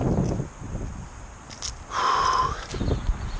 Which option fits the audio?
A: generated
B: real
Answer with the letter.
B